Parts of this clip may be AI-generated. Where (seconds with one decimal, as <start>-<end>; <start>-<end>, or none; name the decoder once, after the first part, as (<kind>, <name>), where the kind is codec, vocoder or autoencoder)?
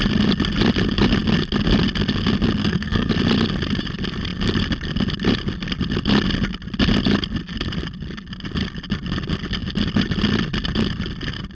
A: 2.6-3.1 (codec, SNAC)